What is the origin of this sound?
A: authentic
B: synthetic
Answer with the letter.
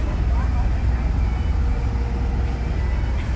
A